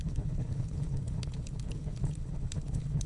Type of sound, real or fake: fake